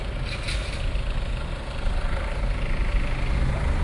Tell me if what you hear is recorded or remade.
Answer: recorded